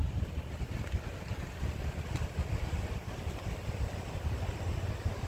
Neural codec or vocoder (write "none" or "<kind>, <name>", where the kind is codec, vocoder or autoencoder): none